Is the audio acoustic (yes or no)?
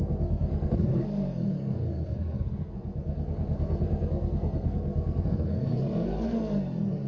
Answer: no